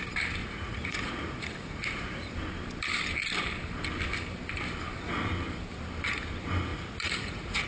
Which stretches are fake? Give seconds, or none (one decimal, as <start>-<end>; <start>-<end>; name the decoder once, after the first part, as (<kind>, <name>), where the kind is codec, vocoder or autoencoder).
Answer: 0.4-2.3 (vocoder, Vocos); 6.7-7.7